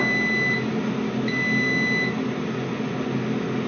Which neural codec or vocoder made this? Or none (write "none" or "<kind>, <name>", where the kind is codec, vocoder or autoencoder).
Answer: none